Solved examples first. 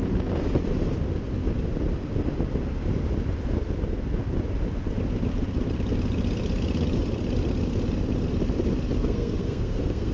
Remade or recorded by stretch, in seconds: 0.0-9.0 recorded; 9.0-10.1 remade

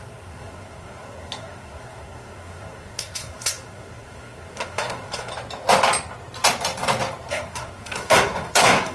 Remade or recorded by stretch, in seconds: 0.0-5.3 remade; 5.3-7.3 recorded; 7.3-8.9 remade